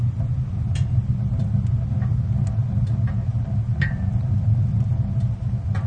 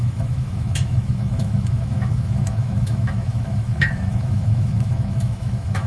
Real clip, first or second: first